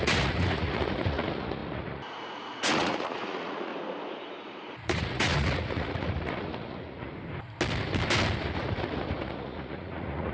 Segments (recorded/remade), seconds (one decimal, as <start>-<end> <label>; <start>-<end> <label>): 0.0-3.7 remade; 3.7-4.7 recorded; 4.7-7.1 remade; 7.1-8.6 recorded; 8.6-10.3 remade